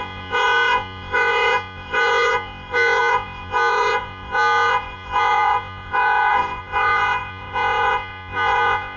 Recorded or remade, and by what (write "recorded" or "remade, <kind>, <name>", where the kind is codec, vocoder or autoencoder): remade, vocoder, Vocos